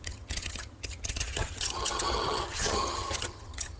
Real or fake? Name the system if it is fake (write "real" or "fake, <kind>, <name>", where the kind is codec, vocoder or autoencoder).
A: fake, vocoder, HiFi-GAN